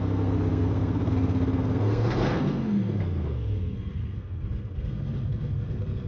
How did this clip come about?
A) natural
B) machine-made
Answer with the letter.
B